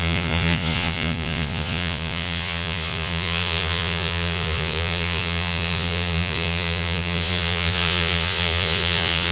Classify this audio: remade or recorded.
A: remade